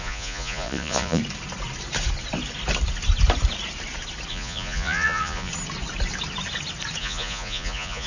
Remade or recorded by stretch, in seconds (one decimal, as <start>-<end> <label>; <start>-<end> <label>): 0.0-1.2 remade; 1.2-4.3 recorded; 4.3-5.5 remade; 5.5-7.0 recorded; 7.0-8.1 remade